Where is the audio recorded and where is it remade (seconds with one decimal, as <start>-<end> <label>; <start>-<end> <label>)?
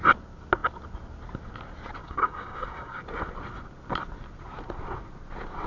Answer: 0.0-2.0 recorded; 2.0-3.0 remade; 3.0-5.7 recorded